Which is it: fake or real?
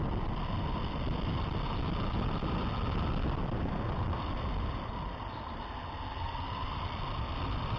real